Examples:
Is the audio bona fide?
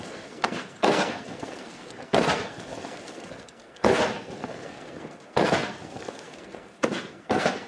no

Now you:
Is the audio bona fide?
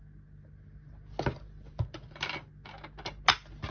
yes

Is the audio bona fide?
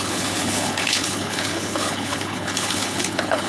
no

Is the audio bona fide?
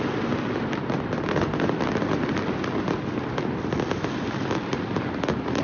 yes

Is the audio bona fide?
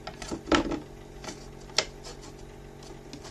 yes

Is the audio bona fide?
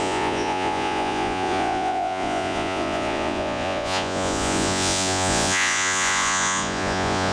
no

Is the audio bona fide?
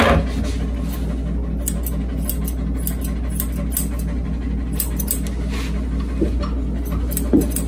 yes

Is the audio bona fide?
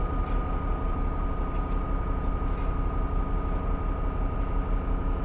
yes